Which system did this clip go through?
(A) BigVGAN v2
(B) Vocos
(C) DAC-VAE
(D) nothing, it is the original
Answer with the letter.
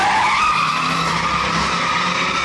D